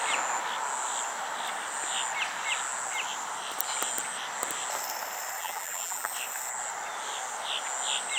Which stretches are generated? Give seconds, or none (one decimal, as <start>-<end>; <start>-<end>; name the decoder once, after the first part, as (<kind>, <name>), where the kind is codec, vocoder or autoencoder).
5.4-6.1 (vocoder, BigVGAN v2)